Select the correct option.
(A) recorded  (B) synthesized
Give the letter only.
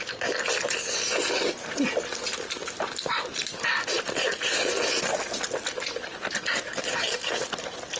A